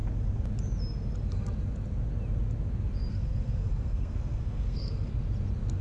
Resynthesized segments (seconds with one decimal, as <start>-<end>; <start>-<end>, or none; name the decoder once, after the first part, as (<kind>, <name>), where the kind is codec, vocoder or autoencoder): 3.1-5.1 (codec, SNAC)